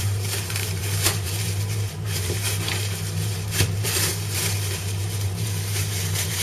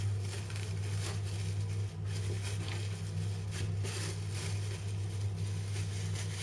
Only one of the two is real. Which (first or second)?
second